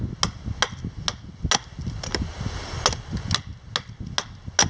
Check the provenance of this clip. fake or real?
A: real